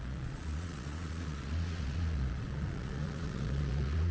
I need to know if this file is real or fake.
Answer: fake